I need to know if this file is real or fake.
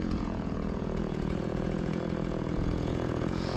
fake